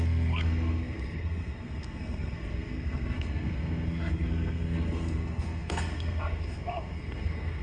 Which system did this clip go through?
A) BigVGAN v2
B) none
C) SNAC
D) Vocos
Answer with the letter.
C